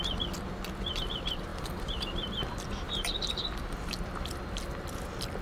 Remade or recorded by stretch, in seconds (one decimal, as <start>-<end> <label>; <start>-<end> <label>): 0.0-1.5 recorded; 1.5-4.5 remade; 4.5-5.4 recorded